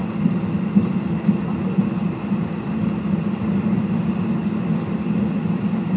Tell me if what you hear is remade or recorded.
recorded